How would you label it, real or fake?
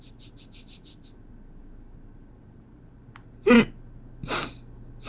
real